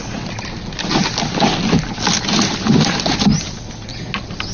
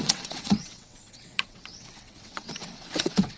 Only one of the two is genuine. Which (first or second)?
first